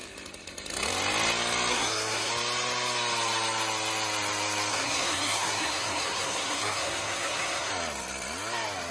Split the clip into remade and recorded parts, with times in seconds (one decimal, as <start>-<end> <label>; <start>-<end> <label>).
0.0-1.7 recorded; 1.7-2.3 remade; 2.3-4.7 recorded; 4.7-7.7 remade; 7.7-8.9 recorded